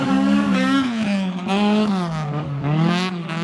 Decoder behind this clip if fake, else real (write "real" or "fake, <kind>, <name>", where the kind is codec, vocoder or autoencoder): fake, codec, DAC